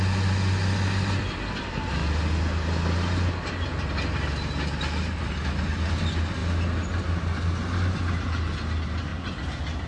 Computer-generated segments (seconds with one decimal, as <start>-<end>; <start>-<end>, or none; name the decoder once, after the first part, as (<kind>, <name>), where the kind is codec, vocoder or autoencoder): none